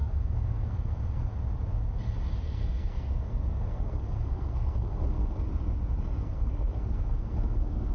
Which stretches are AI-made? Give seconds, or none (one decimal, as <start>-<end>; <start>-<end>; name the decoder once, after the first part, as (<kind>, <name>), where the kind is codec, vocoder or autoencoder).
0.0-1.3 (codec, SNAC); 2.4-5.5; 6.0-7.9